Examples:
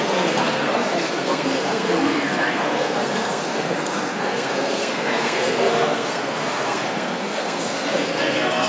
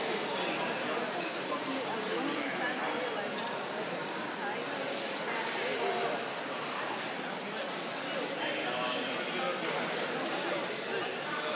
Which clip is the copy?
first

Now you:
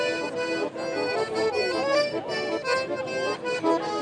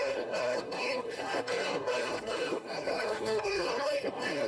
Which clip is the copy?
second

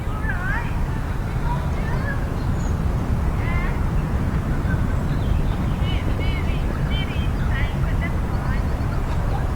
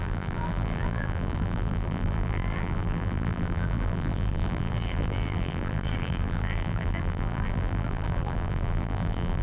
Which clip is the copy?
second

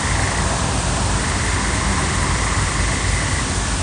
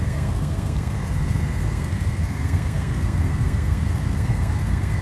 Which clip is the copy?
second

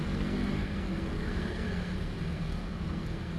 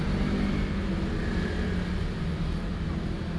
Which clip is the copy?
first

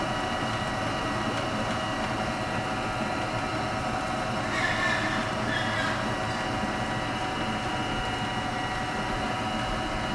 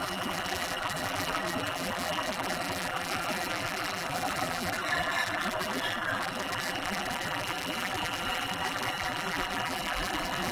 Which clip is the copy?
second